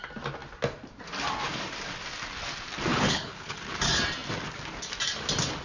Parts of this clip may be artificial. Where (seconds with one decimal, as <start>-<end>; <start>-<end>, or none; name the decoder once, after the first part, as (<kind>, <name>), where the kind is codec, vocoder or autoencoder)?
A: 2.9-3.6 (codec, HILCodec)